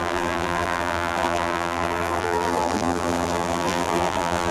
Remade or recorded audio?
remade